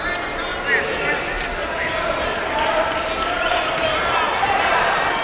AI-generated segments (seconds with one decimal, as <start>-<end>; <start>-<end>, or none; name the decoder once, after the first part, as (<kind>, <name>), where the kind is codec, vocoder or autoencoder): none